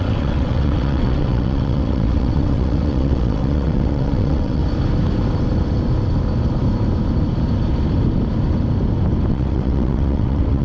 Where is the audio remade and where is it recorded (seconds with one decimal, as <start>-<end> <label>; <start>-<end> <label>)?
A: 0.0-4.6 remade; 4.6-9.3 recorded; 9.3-10.6 remade